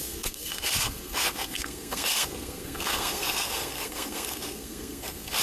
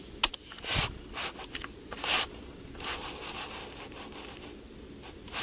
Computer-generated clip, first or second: first